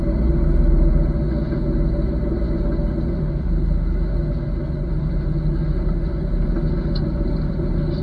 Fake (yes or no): no